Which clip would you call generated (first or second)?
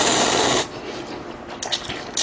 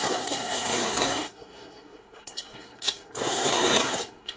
second